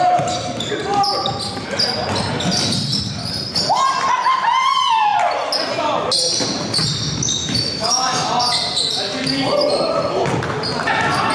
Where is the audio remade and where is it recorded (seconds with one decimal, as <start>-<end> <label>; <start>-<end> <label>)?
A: 0.0-7.4 recorded; 7.4-8.3 remade; 8.3-11.3 recorded